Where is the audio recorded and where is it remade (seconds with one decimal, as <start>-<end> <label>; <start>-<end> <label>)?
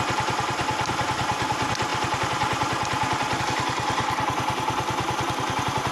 0.0-5.9 recorded